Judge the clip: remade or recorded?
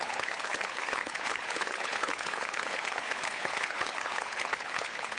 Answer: remade